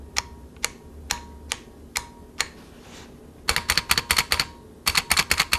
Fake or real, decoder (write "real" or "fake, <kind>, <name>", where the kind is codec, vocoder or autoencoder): real